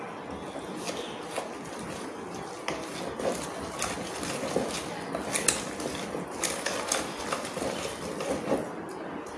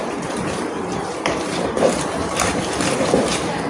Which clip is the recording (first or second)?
first